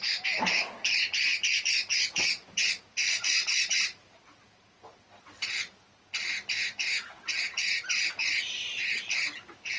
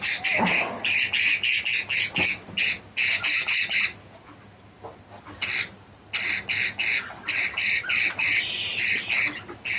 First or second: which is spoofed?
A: first